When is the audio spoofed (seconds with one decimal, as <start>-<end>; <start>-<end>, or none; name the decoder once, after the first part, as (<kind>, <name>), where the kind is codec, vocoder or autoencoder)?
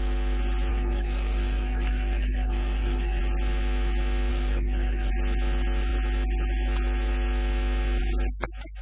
0.7-3.2 (codec, SNAC); 4.3-5.1